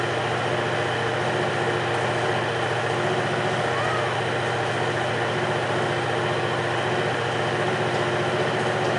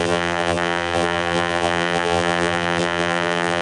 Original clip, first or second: first